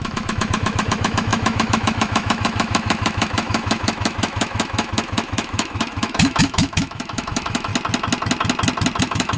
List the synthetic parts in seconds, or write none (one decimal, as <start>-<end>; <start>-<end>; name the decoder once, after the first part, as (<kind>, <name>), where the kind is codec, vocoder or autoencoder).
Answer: 0.0-7.7 (autoencoder, DAC-VAE); 9.0-9.4